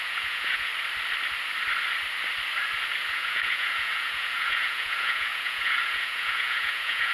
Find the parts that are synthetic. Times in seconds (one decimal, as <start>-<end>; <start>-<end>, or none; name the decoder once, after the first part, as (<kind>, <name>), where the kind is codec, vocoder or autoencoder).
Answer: 0.0-0.7 (vocoder, Vocos); 3.1-7.1